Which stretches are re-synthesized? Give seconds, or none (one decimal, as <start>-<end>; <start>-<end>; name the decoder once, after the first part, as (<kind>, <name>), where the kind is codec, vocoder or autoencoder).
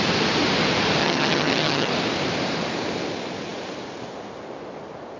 1.0-1.9 (vocoder, HiFi-GAN)